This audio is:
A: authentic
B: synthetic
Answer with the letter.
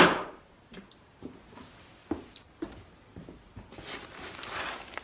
A